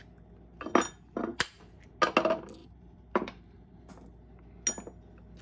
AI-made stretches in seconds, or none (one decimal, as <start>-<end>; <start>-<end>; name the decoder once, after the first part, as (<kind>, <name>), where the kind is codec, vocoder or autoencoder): 1.3-1.9 (vocoder, BigVGAN v2); 2.6-3.9